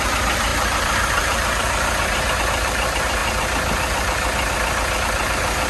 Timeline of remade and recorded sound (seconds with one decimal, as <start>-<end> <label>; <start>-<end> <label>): 0.0-3.2 remade; 3.2-5.0 recorded; 5.0-5.7 remade